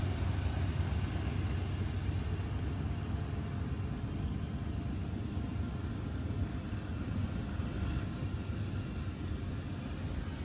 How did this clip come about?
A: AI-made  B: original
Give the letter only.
B